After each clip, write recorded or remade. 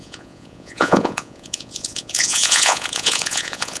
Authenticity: remade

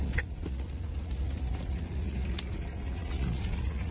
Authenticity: remade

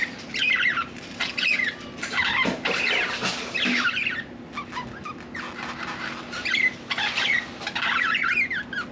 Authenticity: recorded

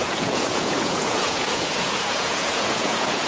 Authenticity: remade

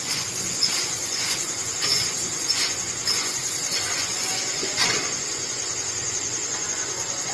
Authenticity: remade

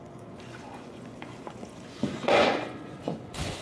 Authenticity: remade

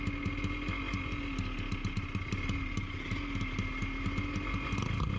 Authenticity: recorded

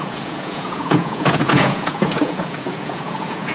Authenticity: remade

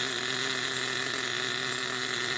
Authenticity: recorded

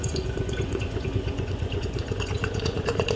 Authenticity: remade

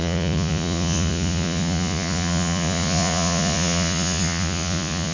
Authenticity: remade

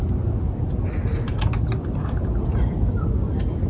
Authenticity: recorded